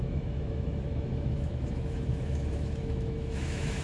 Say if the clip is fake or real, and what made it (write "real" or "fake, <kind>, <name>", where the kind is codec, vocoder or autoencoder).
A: fake, autoencoder, DAC-VAE